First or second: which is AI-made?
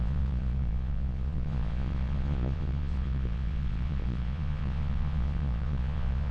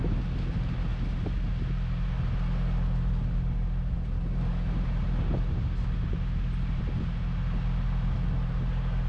first